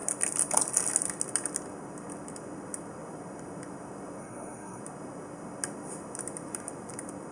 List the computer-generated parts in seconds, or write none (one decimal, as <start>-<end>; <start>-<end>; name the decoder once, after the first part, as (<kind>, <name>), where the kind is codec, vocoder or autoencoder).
4.2-4.8 (codec, SNAC)